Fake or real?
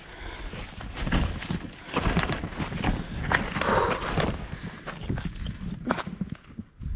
real